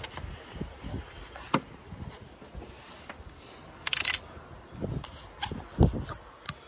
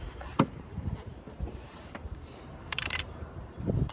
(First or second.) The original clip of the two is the first